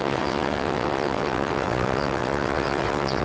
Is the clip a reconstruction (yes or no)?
yes